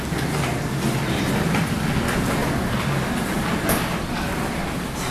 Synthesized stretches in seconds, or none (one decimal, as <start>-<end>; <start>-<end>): none

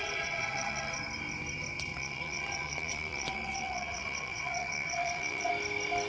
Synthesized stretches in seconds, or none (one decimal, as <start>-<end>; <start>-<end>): 0.0-1.0; 1.9-5.5

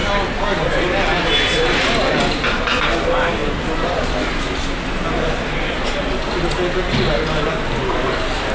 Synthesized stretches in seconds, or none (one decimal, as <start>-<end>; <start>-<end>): none

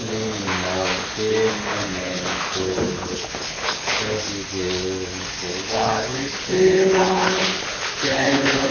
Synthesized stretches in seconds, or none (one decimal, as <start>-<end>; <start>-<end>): 0.0-0.5; 1.5-4.2; 5.5-8.7

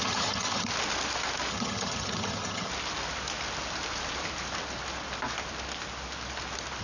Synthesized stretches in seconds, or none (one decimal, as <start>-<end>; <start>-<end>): 0.0-0.7; 1.5-2.7

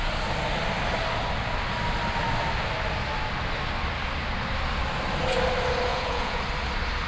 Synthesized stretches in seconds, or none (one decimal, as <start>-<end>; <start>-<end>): 5.9-6.4